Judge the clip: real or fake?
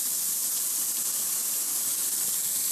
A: real